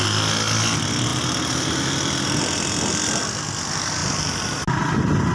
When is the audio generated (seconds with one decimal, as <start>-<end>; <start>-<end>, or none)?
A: none